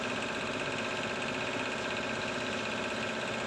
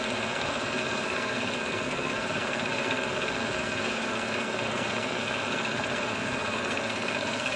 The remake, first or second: second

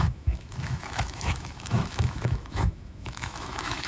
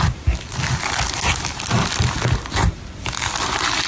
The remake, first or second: first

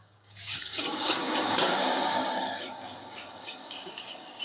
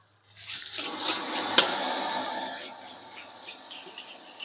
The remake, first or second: first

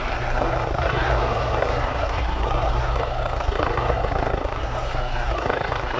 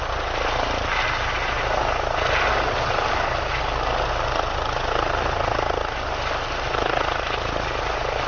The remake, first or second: first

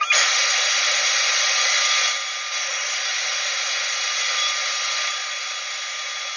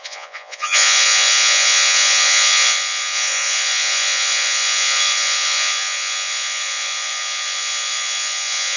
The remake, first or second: second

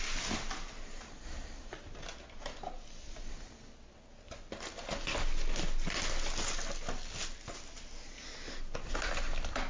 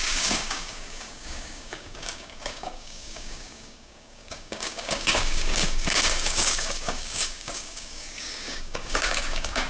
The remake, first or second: second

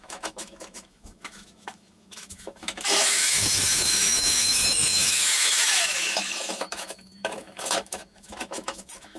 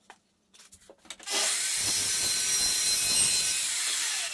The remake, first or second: first